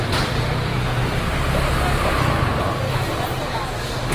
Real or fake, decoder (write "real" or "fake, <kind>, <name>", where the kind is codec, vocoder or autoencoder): real